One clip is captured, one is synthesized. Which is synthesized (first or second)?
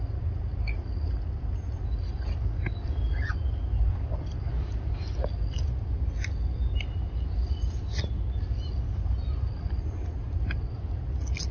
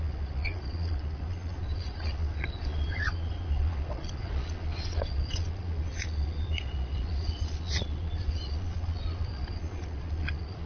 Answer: second